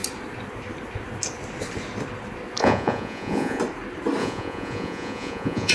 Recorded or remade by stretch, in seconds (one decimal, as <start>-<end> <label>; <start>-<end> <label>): 0.0-2.6 recorded; 2.6-3.6 remade; 3.6-4.2 recorded; 4.2-5.7 remade